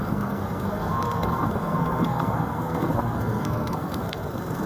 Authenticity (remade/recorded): remade